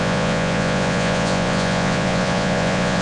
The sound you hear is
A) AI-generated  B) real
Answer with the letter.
A